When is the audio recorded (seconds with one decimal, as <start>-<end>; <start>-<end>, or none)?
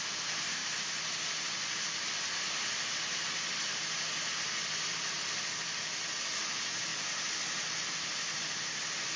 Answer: 0.0-9.2